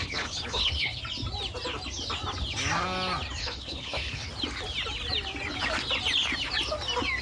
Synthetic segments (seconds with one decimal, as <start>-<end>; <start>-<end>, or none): 0.0-1.0; 3.4-4.3